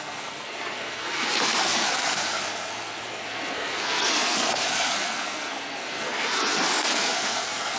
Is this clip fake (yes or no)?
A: yes